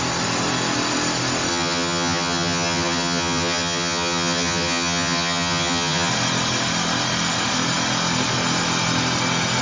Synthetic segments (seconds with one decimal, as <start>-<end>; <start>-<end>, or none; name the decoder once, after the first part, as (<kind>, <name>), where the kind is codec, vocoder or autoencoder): 1.5-6.1 (vocoder, HiFi-GAN)